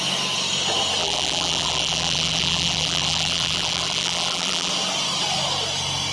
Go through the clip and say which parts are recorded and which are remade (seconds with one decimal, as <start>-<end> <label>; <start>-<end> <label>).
0.0-1.0 recorded; 1.0-4.7 remade; 4.7-6.1 recorded